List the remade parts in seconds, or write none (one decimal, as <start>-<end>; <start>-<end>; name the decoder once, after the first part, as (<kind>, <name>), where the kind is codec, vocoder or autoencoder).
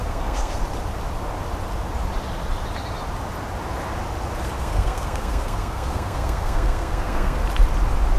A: 0.0-0.6 (codec, SNAC); 4.6-7.4